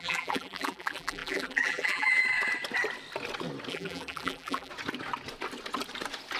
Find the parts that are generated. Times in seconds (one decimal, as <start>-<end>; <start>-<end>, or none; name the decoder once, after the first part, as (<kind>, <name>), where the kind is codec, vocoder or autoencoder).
0.0-2.2 (vocoder, BigVGAN v2); 3.7-4.7